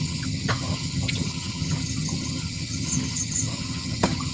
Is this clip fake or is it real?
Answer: fake